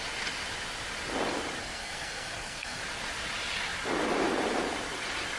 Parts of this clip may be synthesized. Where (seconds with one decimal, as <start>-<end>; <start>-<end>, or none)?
1.6-2.8